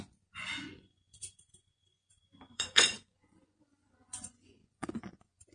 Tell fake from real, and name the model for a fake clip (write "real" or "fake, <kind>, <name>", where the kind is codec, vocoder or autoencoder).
fake, vocoder, Vocos